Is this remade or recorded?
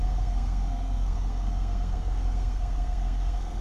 remade